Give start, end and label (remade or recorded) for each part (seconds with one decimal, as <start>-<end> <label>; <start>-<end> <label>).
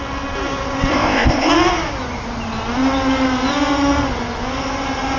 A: 0.0-0.9 recorded; 0.9-1.5 remade; 1.5-5.2 recorded